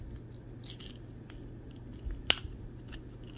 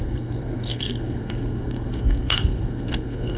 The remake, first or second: second